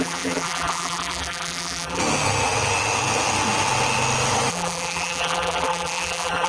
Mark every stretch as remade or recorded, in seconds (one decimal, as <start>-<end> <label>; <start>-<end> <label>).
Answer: 0.0-2.0 remade; 2.0-4.5 recorded; 4.5-6.5 remade